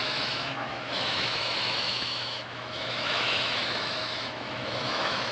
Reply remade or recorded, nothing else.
remade